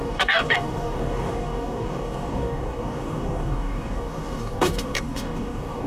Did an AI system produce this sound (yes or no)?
yes